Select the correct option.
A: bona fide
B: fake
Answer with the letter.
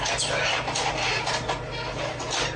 A